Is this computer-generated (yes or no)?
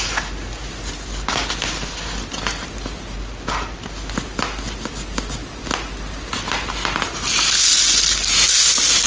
no